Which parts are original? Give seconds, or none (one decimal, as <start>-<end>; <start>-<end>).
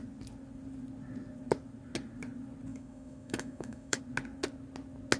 0.0-2.7; 4.0-5.2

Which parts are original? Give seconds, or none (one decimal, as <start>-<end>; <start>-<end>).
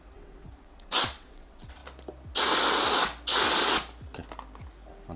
1.8-5.2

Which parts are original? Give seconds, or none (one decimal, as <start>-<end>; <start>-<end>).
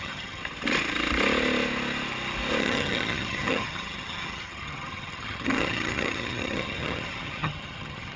0.4-2.6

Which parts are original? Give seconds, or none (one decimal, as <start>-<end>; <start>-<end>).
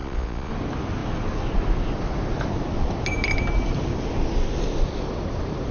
0.5-5.7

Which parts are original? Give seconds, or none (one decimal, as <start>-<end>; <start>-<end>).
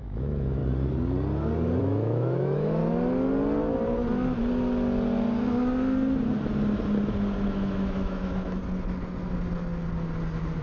0.6-1.8; 2.8-7.5; 8.6-10.6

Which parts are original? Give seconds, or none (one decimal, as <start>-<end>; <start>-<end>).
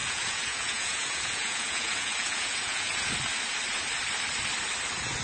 3.1-5.2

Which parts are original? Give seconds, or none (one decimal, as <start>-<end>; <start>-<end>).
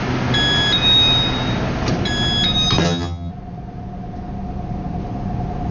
0.0-2.8; 3.3-5.7